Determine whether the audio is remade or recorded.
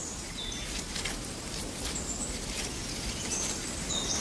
recorded